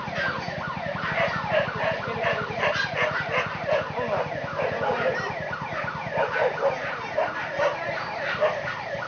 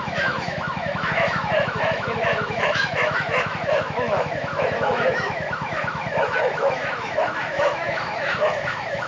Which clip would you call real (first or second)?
first